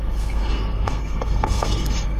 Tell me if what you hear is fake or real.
fake